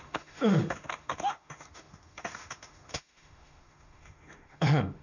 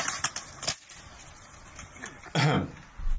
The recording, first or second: second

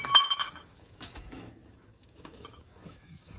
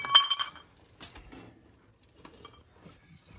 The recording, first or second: second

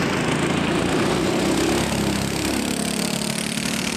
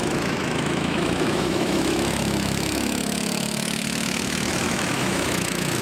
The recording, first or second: first